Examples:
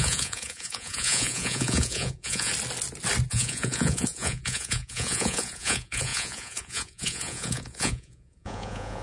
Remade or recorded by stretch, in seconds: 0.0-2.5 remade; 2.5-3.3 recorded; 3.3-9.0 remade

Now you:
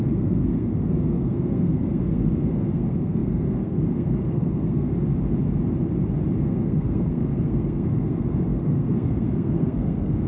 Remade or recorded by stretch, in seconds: 0.0-4.9 remade; 4.9-6.4 recorded; 6.4-10.3 remade

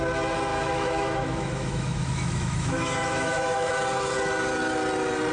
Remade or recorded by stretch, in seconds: 0.0-0.5 recorded; 0.5-3.7 remade; 3.7-5.3 recorded

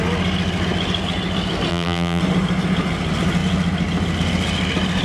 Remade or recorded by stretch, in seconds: 0.0-1.7 recorded; 1.7-2.2 remade; 2.2-5.0 recorded

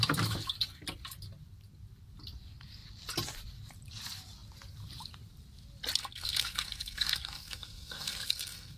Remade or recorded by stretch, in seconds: 0.0-6.0 recorded; 6.0-8.8 remade